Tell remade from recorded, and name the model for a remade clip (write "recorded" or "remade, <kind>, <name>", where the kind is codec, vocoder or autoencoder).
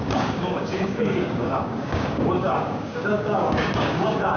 remade, codec, DAC